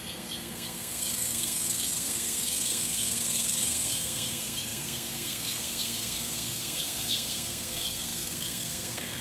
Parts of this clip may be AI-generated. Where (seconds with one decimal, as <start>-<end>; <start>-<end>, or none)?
0.0-9.2